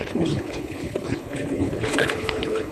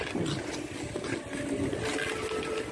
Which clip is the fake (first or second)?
first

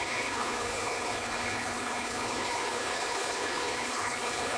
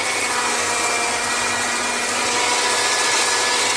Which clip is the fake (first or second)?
first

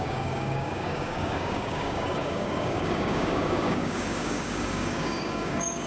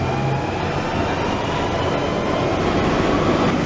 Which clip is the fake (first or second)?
first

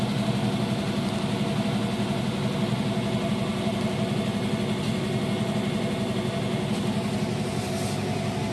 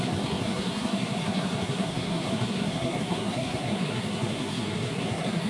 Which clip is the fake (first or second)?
second